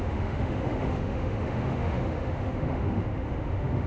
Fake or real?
fake